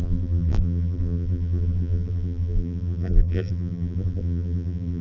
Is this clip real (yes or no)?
no